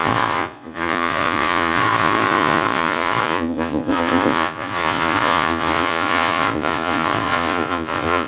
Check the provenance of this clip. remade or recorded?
remade